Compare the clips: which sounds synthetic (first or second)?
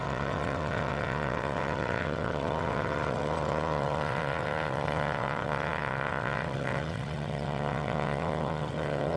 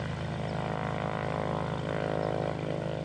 first